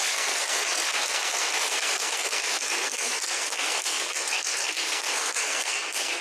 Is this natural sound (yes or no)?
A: no